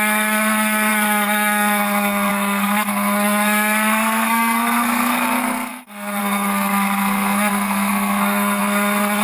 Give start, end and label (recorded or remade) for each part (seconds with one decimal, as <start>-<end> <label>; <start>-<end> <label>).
0.0-9.2 remade